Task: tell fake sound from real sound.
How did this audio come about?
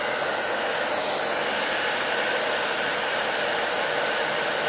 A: real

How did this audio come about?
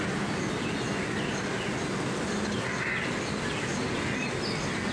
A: real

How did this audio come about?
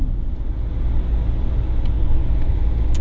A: real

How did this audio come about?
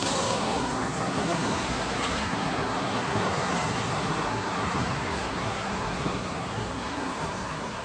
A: fake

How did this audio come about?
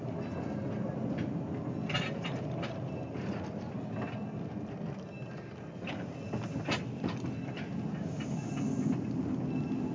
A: real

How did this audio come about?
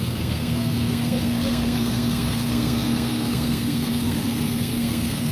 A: fake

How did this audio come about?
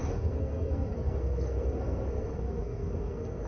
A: fake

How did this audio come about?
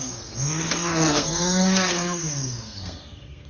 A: fake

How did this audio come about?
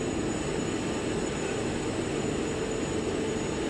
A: real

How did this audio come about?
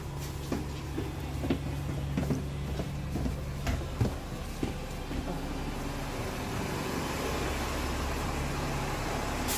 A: real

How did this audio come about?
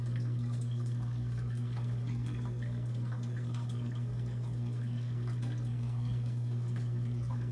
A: fake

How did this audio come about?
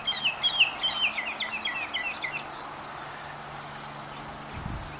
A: real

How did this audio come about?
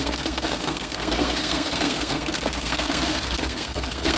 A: fake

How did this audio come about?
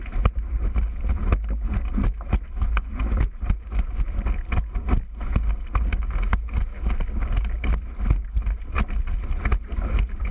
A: real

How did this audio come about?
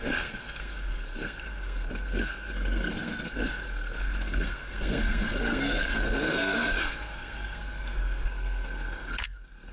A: fake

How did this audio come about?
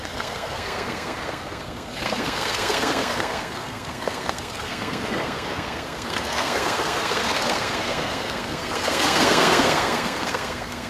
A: fake